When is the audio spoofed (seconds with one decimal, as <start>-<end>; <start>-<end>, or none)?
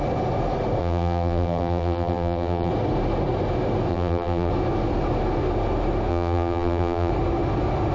0.8-2.7; 3.9-4.5; 6.1-7.1